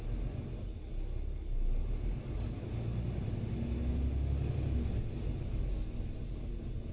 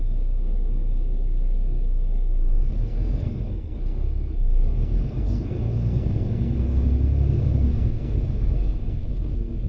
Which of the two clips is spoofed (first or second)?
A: second